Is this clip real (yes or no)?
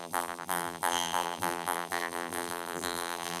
no